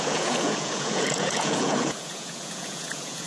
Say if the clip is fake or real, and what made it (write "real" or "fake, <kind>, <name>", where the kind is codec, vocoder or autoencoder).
fake, vocoder, Vocos